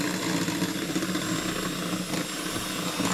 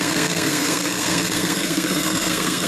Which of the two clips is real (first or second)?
first